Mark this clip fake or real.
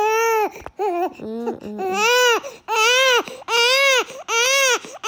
real